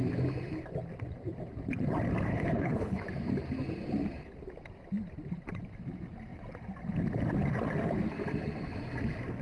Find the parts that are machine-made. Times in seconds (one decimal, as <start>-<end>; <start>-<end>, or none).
2.3-3.0